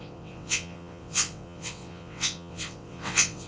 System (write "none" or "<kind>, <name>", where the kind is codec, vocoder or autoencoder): vocoder, WaveNeXt